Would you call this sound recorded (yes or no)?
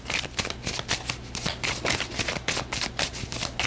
yes